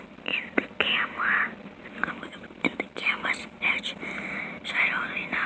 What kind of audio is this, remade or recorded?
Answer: remade